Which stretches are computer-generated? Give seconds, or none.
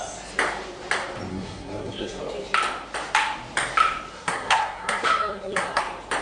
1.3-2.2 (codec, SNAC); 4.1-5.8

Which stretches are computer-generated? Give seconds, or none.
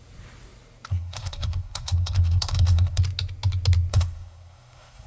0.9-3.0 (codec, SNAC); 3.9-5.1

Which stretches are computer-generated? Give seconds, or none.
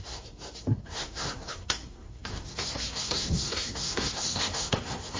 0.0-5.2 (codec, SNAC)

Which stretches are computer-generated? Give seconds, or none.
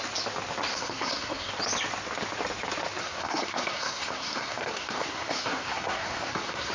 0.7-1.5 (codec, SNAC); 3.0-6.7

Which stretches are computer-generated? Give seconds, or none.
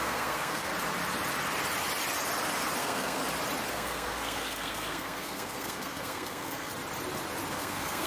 0.0-0.7 (codec, SNAC); 2.8-3.2; 3.7-6.7; 7.5-8.1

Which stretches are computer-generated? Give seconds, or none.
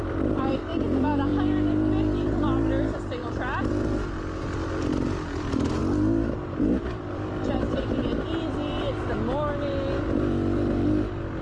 none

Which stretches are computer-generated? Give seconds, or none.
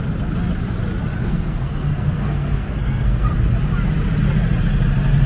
1.2-3.4 (codec, SNAC)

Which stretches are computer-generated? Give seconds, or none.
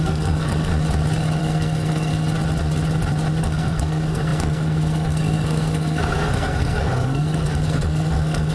0.0-0.7 (codec, SNAC); 1.4-2.1; 3.4-8.5